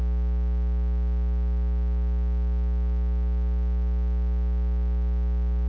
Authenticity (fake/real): real